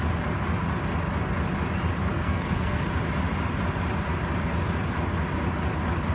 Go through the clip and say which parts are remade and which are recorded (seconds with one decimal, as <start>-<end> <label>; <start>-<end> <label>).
0.0-2.1 recorded; 2.1-2.8 remade; 2.8-6.1 recorded